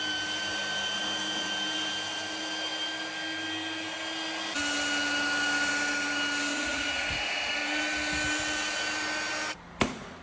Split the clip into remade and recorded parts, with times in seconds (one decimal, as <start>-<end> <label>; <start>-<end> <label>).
0.0-6.5 recorded; 6.5-7.5 remade; 7.5-10.2 recorded